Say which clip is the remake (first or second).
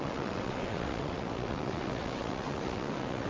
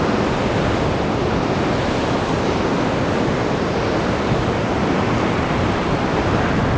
first